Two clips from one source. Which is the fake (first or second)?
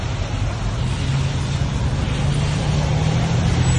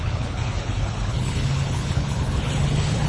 second